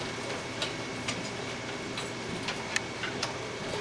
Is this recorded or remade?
recorded